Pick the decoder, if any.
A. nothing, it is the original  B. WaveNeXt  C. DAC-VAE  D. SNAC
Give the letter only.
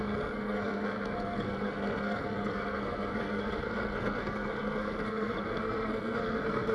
D